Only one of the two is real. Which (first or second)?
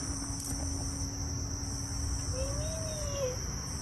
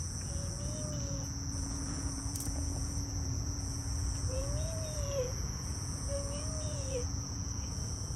first